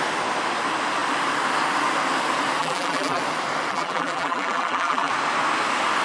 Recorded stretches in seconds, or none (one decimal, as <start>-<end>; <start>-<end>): 0.0-2.6; 3.2-3.7; 5.1-6.0